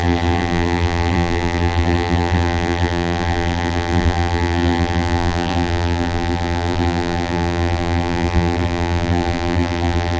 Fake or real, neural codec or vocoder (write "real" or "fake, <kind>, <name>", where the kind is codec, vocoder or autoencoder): fake, vocoder, BigVGAN v2